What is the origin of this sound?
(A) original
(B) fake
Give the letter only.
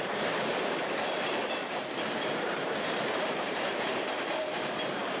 B